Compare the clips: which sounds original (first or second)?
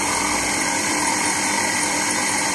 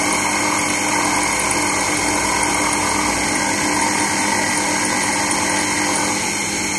second